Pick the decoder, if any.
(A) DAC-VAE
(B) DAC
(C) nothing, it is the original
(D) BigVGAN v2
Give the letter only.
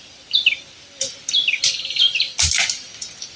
C